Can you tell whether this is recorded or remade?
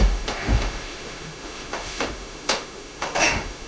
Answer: remade